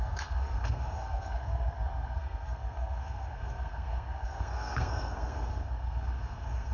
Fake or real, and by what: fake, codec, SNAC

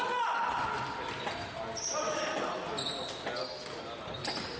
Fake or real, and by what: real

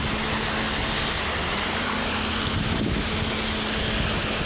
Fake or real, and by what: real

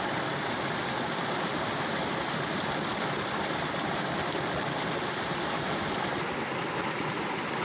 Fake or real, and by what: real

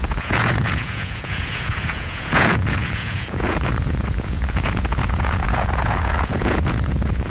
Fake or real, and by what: fake, vocoder, Vocos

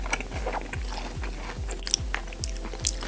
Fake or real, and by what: real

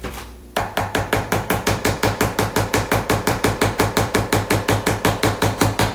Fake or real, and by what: fake, vocoder, BigVGAN v2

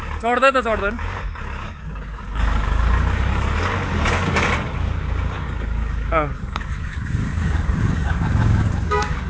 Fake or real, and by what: fake, codec, DAC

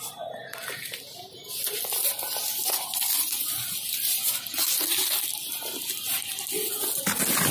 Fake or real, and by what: real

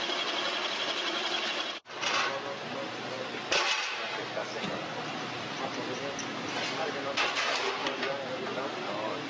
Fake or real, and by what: real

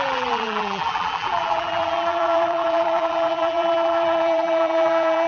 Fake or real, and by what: fake, vocoder, BigVGAN v2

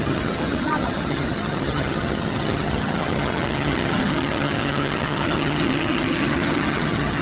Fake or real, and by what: fake, vocoder, HiFi-GAN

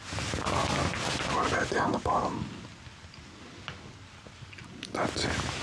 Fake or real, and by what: real